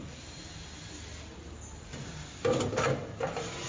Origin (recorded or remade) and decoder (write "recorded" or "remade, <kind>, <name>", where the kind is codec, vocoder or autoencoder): recorded